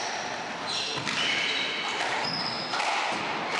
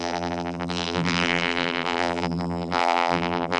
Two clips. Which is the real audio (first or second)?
first